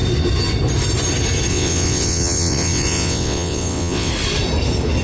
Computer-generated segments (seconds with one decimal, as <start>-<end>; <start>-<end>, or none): 1.5-4.1